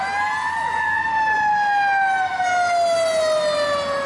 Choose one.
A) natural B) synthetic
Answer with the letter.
A